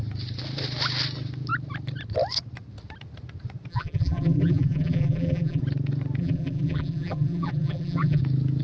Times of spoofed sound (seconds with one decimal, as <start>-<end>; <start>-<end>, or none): 3.7-5.6; 6.2-8.2